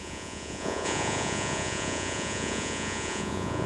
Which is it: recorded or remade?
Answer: remade